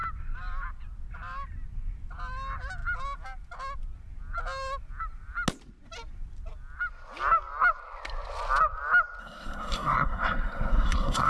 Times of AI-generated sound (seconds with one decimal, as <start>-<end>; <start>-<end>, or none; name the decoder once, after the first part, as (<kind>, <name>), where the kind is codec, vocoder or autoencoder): 9.2-11.3 (codec, SNAC)